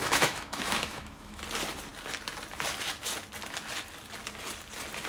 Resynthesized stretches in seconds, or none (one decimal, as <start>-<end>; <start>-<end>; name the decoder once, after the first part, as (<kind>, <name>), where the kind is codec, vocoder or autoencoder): 0.0-1.4 (autoencoder, DAC-VAE)

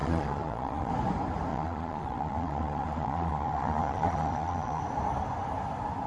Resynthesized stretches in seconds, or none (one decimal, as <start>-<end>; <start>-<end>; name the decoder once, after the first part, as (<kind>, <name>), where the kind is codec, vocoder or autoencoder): 0.0-0.9 (vocoder, Vocos); 1.5-4.8

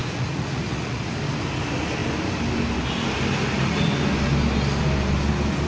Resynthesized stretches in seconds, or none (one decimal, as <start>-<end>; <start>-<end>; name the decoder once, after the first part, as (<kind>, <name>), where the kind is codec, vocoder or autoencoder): 0.0-1.0 (vocoder, Vocos)

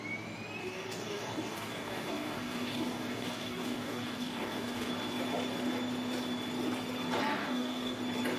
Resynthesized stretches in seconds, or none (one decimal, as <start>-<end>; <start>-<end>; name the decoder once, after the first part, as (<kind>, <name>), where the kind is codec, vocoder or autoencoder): 0.6-4.9 (codec, DAC); 7.4-8.0

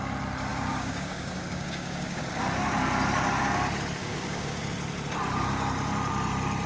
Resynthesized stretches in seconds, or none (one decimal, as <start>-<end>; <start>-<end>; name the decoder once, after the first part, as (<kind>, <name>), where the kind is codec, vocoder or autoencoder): 0.5-2.2 (codec, DAC); 4.0-4.6